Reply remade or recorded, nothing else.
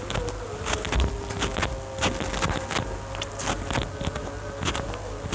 recorded